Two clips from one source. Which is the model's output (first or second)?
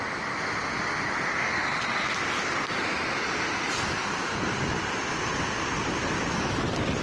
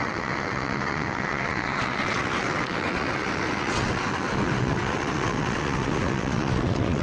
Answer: second